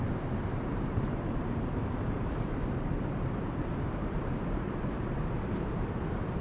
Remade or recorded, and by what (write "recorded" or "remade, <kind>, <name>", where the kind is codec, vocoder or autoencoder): remade, vocoder, BigVGAN v2